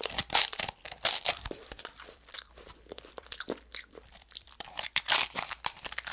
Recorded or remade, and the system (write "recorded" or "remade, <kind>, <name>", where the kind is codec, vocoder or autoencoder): remade, vocoder, BigVGAN v2